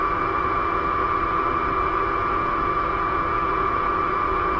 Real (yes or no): no